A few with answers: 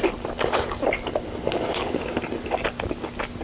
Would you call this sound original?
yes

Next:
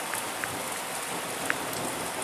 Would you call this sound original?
yes